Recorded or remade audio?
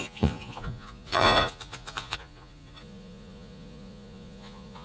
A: remade